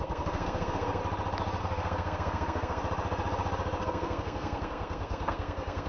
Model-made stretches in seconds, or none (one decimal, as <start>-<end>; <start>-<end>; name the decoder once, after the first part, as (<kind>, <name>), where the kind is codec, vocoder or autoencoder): 0.0-1.0 (codec, SNAC); 1.6-2.8; 3.8-5.9